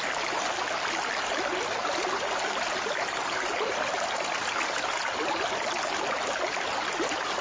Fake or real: real